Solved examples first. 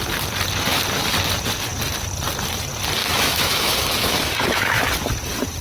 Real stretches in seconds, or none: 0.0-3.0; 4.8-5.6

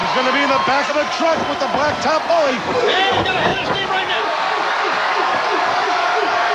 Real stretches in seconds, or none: 0.0-0.9; 1.4-2.3

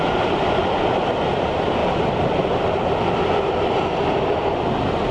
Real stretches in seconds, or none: 0.0-5.1

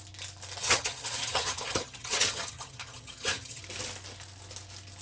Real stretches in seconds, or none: 0.0-0.6; 3.6-5.0

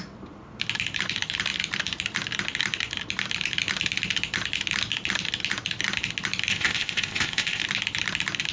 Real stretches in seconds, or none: 0.0-6.5; 7.6-8.5